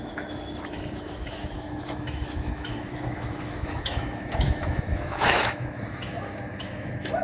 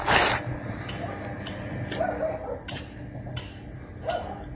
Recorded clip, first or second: second